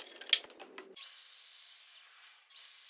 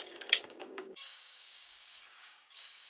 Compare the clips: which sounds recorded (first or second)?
first